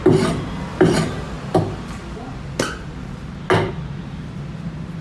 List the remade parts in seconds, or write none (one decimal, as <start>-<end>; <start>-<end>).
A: none